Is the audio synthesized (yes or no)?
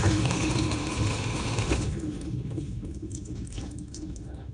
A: yes